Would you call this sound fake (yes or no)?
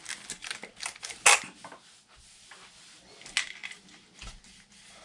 no